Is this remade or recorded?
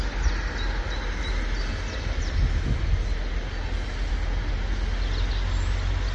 recorded